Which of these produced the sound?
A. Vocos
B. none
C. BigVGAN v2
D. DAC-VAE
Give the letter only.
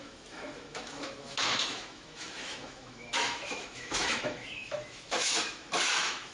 D